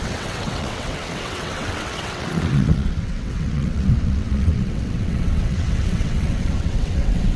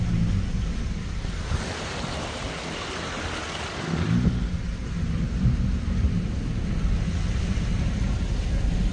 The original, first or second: second